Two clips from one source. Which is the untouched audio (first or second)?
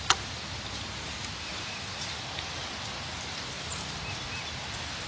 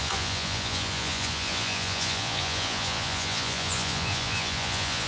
first